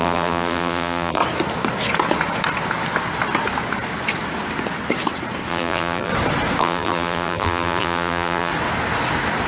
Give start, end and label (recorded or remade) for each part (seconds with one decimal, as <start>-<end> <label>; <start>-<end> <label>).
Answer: 0.0-1.2 remade; 1.2-5.5 recorded; 5.5-6.1 remade; 6.1-6.6 recorded; 6.6-8.5 remade; 8.5-9.5 recorded

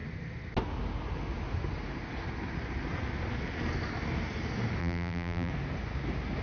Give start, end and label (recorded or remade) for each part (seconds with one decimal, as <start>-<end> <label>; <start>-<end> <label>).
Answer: 0.0-4.8 recorded; 4.8-5.5 remade; 5.5-6.4 recorded

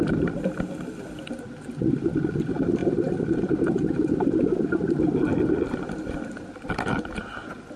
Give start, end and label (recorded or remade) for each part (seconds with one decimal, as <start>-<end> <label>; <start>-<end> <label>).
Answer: 0.0-2.8 recorded; 2.8-4.8 remade; 4.8-7.8 recorded